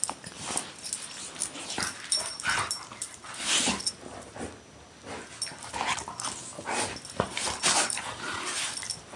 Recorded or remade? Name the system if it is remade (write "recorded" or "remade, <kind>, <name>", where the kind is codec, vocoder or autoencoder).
recorded